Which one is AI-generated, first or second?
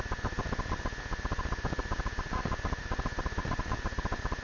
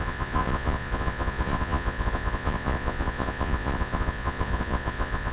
second